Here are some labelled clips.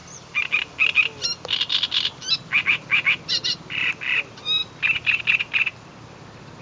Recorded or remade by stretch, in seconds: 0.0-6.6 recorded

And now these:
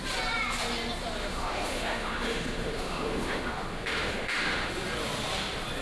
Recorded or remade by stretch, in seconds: 0.0-1.2 recorded; 1.2-4.7 remade; 4.7-5.8 recorded

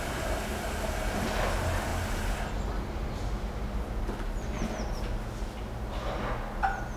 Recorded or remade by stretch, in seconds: 0.0-7.0 recorded

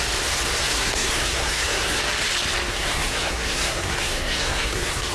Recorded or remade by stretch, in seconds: 0.0-0.6 recorded; 0.6-2.0 remade; 2.0-2.7 recorded; 2.7-5.1 remade

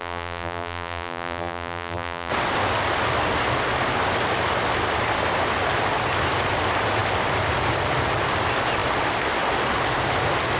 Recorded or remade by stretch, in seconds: 0.0-2.3 remade; 2.3-10.6 recorded

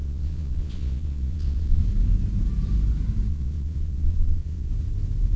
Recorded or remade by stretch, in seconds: 0.0-1.8 remade; 1.8-3.3 recorded; 3.3-4.7 remade; 4.7-5.4 recorded